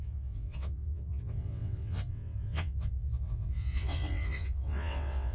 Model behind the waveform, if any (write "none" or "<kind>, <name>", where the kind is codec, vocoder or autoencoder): vocoder, WaveNeXt